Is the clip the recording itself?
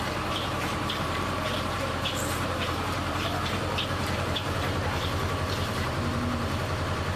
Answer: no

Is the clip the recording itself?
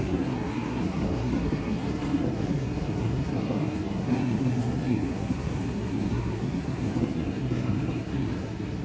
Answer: no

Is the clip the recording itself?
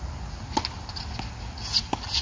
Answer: yes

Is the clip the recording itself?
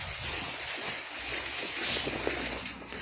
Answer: no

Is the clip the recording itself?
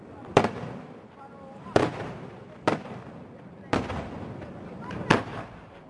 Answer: no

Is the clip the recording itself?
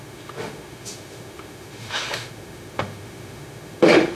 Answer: no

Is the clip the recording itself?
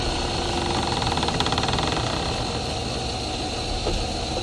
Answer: yes